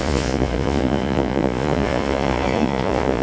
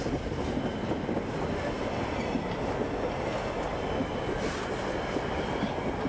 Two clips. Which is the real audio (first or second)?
second